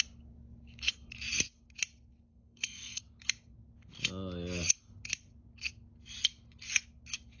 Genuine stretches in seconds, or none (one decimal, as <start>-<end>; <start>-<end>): 0.0-2.3; 3.0-7.4